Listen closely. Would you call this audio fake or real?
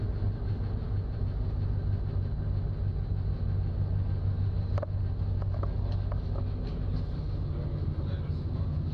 real